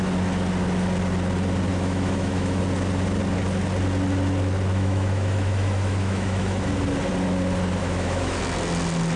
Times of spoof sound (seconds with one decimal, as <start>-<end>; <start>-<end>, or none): 1.7-2.6; 4.7-6.7; 7.8-8.4